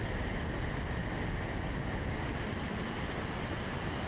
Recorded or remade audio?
recorded